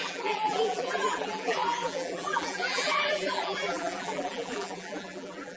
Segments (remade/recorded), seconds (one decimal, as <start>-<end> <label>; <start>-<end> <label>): 0.0-5.6 remade